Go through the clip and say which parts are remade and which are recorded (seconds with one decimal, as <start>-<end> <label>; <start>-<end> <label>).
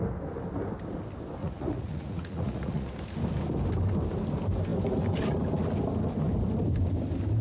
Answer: 0.0-1.4 recorded; 1.4-2.9 remade; 2.9-7.4 recorded